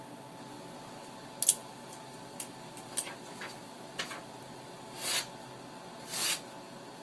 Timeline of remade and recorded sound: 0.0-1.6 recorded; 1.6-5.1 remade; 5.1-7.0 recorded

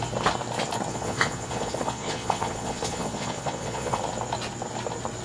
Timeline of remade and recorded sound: 0.0-0.9 recorded; 0.9-4.0 remade; 4.0-5.2 recorded

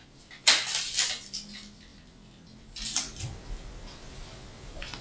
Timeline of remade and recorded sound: 0.0-5.0 recorded

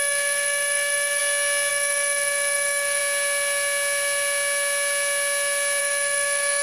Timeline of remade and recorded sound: 0.0-1.2 remade; 1.2-1.7 recorded; 1.7-3.0 remade; 3.0-5.8 recorded; 5.8-6.6 remade

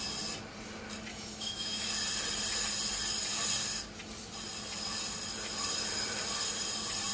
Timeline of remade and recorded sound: 0.0-1.1 recorded; 1.1-1.9 remade; 1.9-7.1 recorded

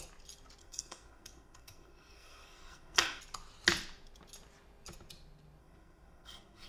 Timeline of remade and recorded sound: 0.0-0.6 recorded; 0.6-3.2 remade; 3.2-5.6 recorded; 5.6-6.7 remade

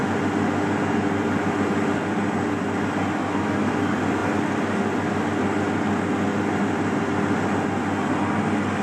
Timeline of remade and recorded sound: 0.0-6.3 recorded; 6.3-7.0 remade; 7.0-8.8 recorded

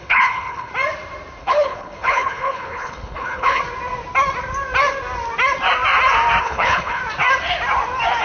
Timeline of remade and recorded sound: 0.0-0.7 remade; 0.7-1.4 recorded; 1.4-3.6 remade; 3.6-6.4 recorded; 6.4-7.0 remade; 7.0-8.2 recorded